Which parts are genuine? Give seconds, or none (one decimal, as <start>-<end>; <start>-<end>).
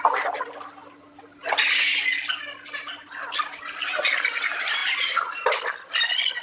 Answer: 0.0-6.4